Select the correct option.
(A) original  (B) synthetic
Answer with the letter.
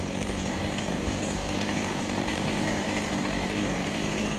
B